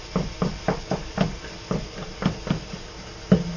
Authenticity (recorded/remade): recorded